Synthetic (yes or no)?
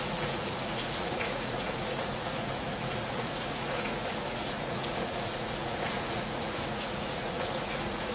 yes